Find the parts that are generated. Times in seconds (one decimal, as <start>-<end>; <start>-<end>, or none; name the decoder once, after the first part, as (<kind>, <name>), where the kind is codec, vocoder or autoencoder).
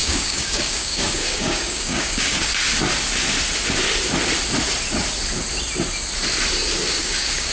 0.0-2.5 (codec, DAC); 7.0-7.5